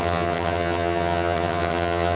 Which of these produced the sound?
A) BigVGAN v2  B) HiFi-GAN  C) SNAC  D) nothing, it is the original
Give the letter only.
B